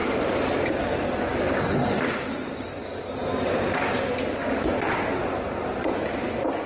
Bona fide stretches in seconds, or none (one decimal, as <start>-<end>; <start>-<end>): 0.7-1.3; 2.8-6.7